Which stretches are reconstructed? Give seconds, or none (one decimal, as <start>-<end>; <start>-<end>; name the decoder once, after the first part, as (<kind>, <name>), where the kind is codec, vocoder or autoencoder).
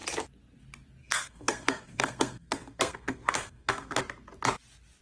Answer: 1.0-4.0 (codec, SNAC)